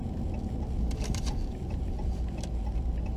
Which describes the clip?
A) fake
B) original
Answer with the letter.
B